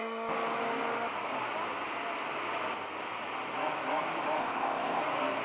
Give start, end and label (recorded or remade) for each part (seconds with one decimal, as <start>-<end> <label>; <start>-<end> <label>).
0.0-4.4 recorded; 4.4-5.0 remade; 5.0-5.4 recorded